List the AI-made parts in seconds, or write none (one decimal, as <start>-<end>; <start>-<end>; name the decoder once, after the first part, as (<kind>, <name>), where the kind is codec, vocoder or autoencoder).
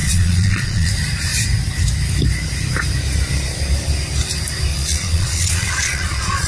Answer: 0.0-0.9 (vocoder, Vocos); 4.7-6.5